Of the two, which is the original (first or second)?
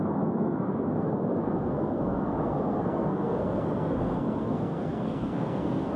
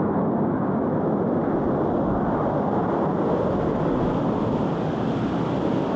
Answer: second